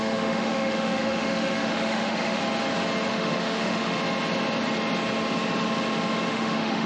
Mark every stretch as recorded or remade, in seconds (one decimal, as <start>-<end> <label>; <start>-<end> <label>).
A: 0.0-2.4 remade; 2.4-3.1 recorded; 3.1-4.0 remade; 4.0-6.3 recorded; 6.3-6.9 remade